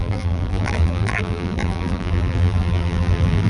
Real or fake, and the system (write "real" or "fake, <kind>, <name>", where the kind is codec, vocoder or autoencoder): fake, vocoder, BigVGAN v2